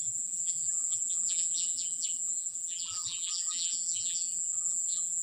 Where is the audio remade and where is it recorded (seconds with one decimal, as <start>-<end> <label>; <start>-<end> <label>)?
0.0-5.2 remade